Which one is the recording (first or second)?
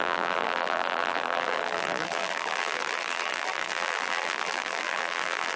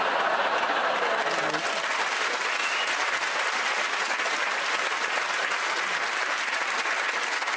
second